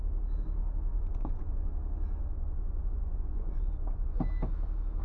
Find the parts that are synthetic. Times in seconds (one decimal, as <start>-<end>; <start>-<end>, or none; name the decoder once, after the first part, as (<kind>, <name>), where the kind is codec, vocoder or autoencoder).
0.9-1.7 (vocoder, Vocos); 2.2-4.2